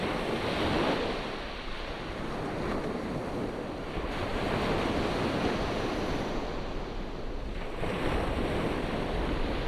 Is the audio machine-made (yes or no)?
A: no